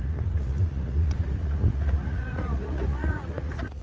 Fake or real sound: fake